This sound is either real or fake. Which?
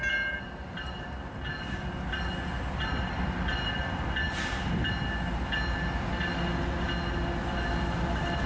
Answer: real